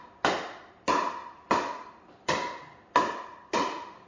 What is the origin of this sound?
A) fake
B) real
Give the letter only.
B